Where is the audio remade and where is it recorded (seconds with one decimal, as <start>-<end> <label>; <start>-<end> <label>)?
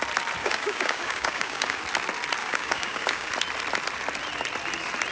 0.0-0.4 recorded; 0.4-1.8 remade; 1.8-2.4 recorded; 2.4-3.3 remade; 3.3-5.1 recorded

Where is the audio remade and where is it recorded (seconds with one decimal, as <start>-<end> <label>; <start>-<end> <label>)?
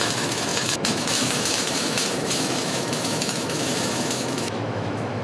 0.0-5.2 remade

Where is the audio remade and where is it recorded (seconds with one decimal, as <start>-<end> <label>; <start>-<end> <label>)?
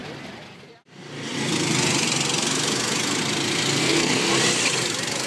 0.0-3.8 recorded; 3.8-4.3 remade; 4.3-5.3 recorded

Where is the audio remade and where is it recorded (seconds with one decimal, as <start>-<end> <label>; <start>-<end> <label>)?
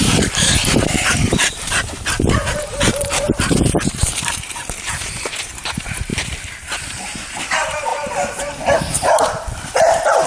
0.0-6.1 remade; 6.1-6.6 recorded; 6.6-7.9 remade; 7.9-8.8 recorded; 8.8-10.3 remade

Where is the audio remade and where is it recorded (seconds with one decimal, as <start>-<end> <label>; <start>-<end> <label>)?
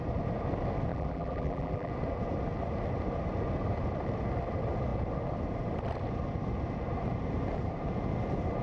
0.0-0.9 recorded; 0.9-1.9 remade; 1.9-8.6 recorded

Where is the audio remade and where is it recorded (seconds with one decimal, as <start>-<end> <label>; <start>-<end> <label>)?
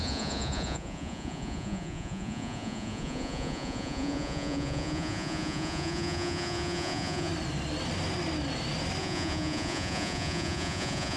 0.0-7.3 remade; 7.3-9.0 recorded; 9.0-11.2 remade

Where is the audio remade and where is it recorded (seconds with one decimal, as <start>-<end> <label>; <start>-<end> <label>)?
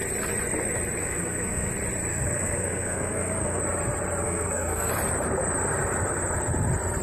0.0-1.0 recorded; 1.0-1.7 remade; 1.7-2.1 recorded; 2.1-3.6 remade; 3.6-4.2 recorded; 4.2-4.9 remade; 4.9-7.0 recorded